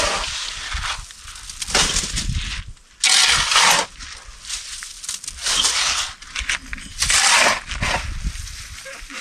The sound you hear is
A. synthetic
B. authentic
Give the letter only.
B